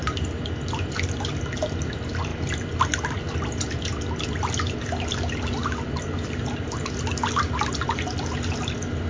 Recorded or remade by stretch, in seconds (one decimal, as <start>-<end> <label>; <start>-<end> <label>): 0.0-9.1 recorded